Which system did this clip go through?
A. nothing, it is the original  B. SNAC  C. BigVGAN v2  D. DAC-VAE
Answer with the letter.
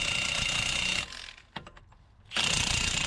A